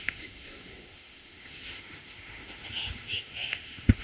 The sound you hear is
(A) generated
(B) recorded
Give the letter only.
A